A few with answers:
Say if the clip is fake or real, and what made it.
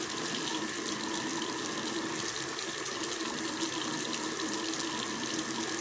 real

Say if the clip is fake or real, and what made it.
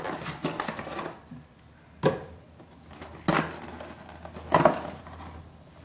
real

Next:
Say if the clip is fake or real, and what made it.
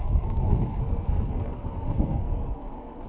fake, codec, SNAC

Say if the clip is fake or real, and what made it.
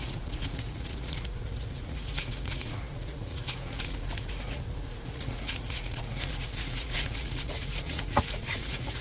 fake, vocoder, Vocos